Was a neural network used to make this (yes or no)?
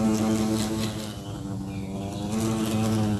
no